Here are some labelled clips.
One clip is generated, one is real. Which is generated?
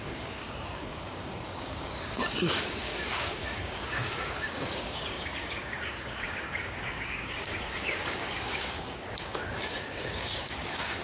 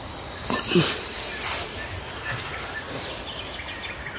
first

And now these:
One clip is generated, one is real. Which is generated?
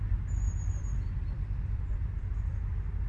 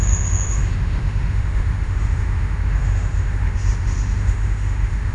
second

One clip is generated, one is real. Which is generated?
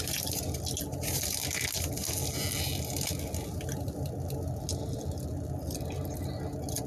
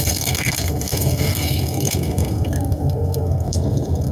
second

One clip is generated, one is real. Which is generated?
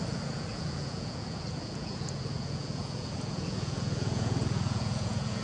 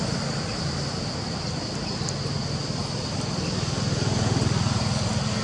first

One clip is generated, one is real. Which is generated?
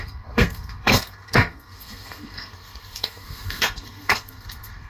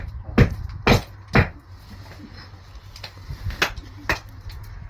first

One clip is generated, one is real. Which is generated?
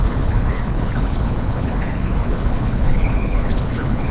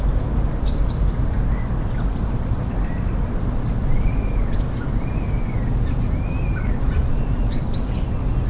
first